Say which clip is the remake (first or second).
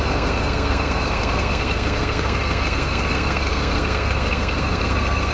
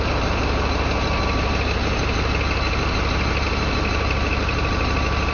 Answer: first